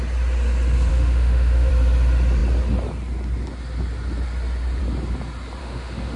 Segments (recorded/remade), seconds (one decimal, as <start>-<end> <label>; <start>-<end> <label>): 0.0-0.9 recorded; 0.9-1.7 remade; 1.7-5.6 recorded; 5.6-6.2 remade